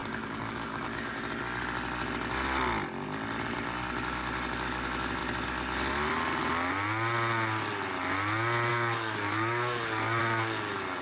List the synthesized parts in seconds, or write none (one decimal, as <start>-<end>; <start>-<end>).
0.0-1.2; 8.7-10.2